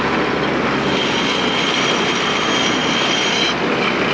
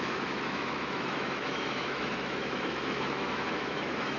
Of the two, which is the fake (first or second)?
second